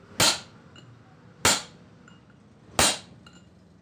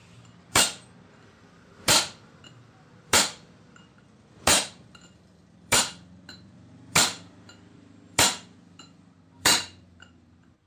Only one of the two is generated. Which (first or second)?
second